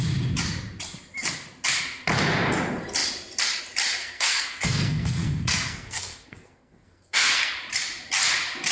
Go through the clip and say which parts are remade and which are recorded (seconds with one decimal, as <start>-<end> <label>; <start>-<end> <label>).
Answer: 0.0-4.0 recorded; 4.0-7.5 remade; 7.5-8.7 recorded